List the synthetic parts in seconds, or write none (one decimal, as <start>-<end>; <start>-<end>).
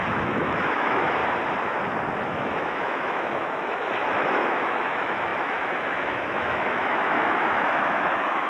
0.0-1.2; 2.3-8.5